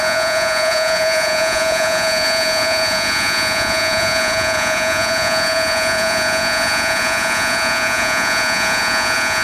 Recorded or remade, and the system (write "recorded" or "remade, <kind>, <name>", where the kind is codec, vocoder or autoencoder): remade, vocoder, Vocos